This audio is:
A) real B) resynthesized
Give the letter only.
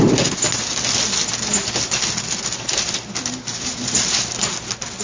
A